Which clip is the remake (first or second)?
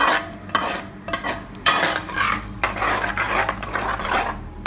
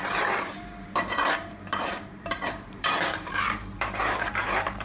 second